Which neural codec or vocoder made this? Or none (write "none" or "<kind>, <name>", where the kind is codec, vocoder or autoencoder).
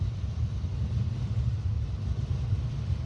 none